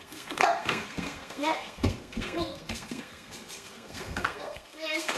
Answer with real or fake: fake